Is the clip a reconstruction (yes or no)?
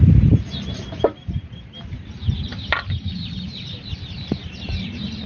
no